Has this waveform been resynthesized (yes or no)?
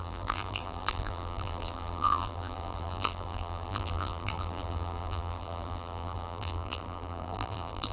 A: yes